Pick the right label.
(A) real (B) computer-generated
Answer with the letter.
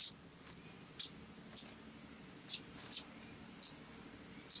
A